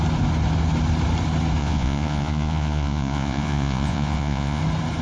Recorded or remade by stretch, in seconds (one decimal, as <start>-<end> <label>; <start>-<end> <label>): 0.0-1.6 recorded; 1.6-4.6 remade; 4.6-5.0 recorded